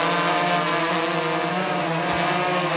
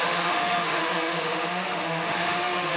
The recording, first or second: first